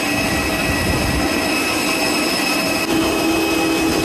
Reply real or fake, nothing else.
real